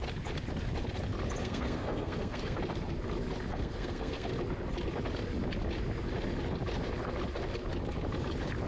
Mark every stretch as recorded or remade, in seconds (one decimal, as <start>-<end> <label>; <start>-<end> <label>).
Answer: 0.0-1.4 recorded; 1.4-2.6 remade; 2.6-3.5 recorded; 3.5-4.3 remade; 4.3-8.7 recorded